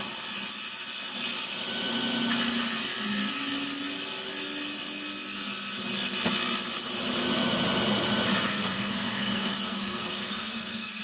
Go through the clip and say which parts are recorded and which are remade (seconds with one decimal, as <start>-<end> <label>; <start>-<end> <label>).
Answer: 0.0-8.5 recorded; 8.5-11.0 remade